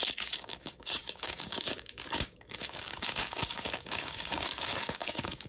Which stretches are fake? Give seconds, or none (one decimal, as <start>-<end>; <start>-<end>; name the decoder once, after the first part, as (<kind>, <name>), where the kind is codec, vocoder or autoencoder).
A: 0.0-5.5 (codec, DAC)